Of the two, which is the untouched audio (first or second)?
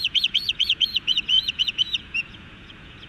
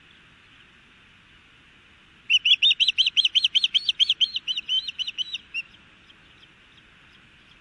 second